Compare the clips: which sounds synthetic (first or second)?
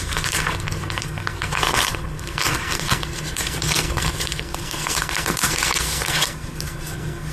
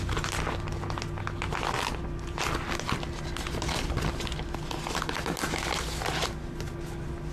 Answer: first